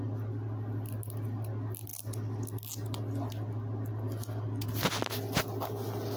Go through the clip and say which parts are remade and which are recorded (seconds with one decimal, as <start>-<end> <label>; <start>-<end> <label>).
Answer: 0.0-6.2 recorded